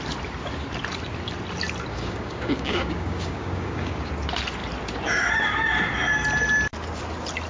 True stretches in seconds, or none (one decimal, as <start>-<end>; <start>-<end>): 0.0-1.9; 4.1-7.5